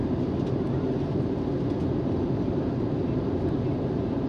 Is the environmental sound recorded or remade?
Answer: recorded